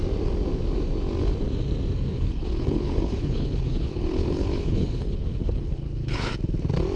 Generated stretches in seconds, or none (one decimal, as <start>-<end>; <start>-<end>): 2.1-6.3